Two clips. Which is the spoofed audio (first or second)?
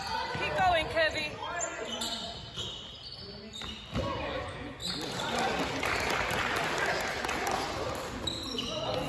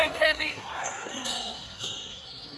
second